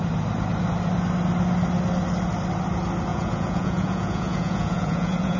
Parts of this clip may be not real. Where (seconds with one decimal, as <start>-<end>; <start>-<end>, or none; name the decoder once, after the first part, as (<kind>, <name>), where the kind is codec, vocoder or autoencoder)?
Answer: 3.1-5.4 (vocoder, Vocos)